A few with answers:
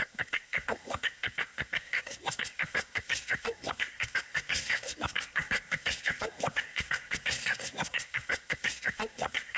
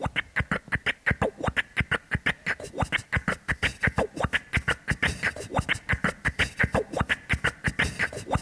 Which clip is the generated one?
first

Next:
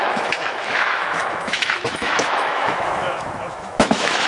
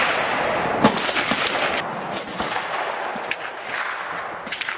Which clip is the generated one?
first